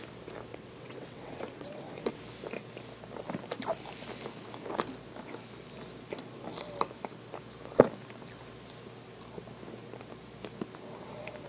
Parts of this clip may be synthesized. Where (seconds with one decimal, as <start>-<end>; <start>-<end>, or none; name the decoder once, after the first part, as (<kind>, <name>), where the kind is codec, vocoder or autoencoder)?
0.5-2.2 (vocoder, WaveNeXt)

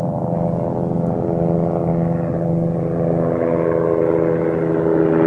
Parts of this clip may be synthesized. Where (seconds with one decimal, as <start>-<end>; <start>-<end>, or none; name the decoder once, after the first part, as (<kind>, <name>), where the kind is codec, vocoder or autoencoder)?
none

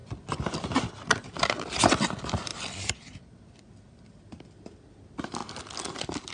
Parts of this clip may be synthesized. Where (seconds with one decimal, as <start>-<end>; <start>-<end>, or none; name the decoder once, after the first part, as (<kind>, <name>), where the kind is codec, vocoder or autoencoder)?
none

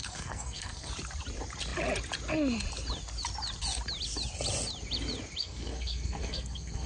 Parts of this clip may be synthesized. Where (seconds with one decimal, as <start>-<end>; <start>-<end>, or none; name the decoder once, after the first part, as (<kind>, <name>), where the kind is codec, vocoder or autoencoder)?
0.0-0.9 (codec, SNAC); 5.4-6.9

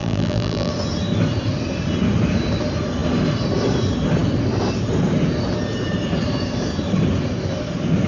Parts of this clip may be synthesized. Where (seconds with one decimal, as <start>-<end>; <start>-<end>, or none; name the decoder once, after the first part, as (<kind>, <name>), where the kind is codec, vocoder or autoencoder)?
0.0-0.7 (vocoder, BigVGAN v2)

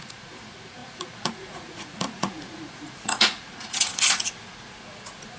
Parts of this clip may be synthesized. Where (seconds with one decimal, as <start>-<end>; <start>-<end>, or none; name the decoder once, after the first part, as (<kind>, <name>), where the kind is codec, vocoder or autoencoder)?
0.0-5.4 (vocoder, Vocos)